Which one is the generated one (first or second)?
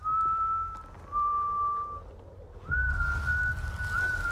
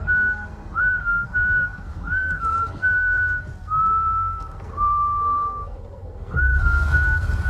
second